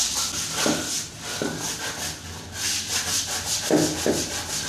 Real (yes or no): yes